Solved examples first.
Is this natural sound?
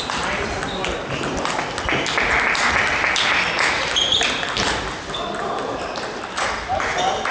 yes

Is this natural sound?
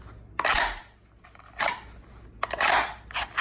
yes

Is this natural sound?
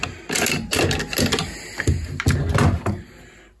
yes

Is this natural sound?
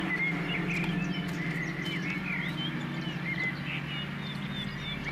yes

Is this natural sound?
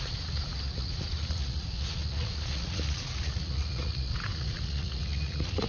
no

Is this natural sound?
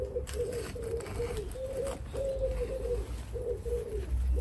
yes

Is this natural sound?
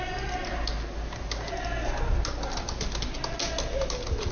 yes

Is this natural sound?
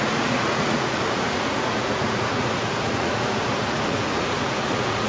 no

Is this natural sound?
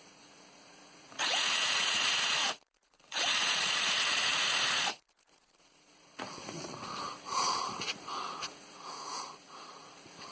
no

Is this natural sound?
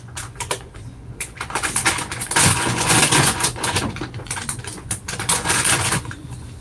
no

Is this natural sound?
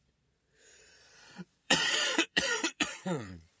no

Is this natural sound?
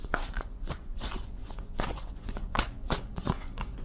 no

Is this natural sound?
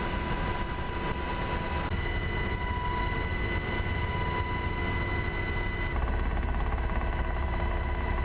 yes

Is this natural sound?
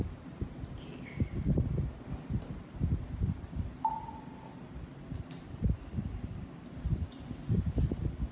yes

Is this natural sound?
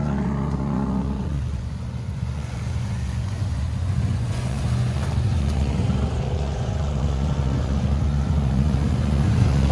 no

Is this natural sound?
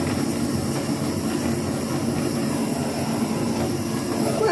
yes